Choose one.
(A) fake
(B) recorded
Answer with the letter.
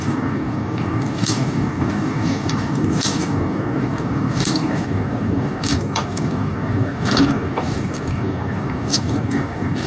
A